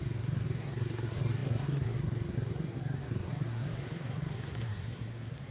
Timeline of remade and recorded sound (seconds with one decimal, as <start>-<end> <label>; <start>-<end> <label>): 0.0-5.5 remade